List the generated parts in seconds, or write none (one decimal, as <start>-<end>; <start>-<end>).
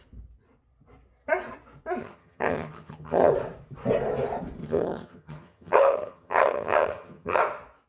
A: 2.0-3.3; 4.6-7.4